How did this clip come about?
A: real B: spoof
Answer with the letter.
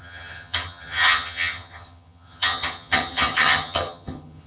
B